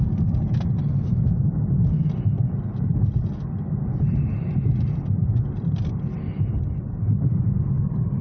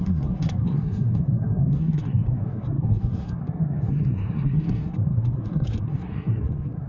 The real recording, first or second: first